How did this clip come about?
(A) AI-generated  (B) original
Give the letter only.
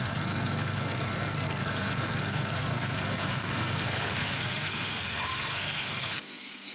A